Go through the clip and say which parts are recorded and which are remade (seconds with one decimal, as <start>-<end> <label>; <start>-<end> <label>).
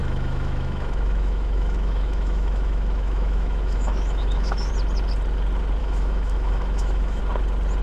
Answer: 0.0-4.7 remade; 4.7-5.8 recorded; 5.8-7.2 remade; 7.2-7.8 recorded